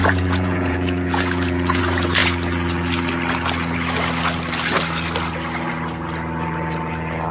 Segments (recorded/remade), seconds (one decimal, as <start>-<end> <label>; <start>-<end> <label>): 0.0-1.8 remade; 1.8-7.3 recorded